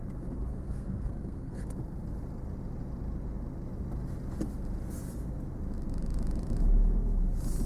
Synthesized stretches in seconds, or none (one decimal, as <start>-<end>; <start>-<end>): 0.5-1.6